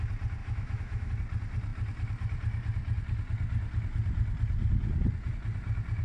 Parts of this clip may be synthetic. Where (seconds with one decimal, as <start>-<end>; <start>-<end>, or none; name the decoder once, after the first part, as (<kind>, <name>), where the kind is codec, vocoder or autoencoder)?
0.4-1.1 (autoencoder, DAC-VAE)